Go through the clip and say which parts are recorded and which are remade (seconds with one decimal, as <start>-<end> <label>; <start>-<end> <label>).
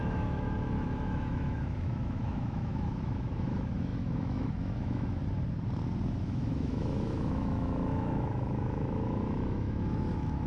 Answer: 0.0-5.2 remade; 5.2-6.2 recorded; 6.2-10.5 remade